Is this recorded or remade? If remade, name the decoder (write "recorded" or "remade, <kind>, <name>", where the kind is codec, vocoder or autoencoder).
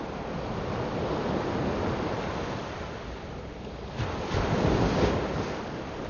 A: recorded